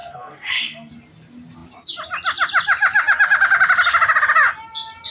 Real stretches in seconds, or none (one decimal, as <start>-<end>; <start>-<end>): 0.9-5.1